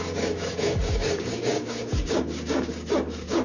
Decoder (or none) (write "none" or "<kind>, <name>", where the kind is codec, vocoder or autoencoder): codec, DAC